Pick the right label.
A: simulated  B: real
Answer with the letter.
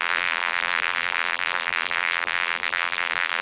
A